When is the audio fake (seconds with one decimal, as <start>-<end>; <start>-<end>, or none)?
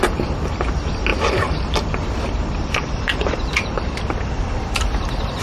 1.1-4.3